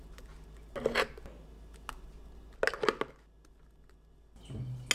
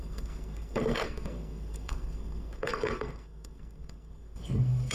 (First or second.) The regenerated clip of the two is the second